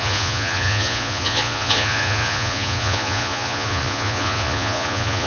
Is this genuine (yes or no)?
no